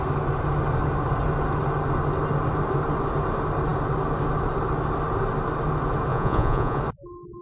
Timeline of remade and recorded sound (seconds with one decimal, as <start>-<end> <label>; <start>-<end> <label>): 0.0-6.1 recorded; 6.1-6.8 remade; 6.8-7.4 recorded